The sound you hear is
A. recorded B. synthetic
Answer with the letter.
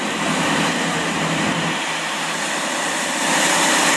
B